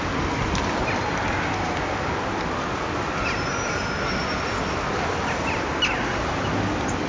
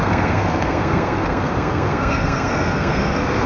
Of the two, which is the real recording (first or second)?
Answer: first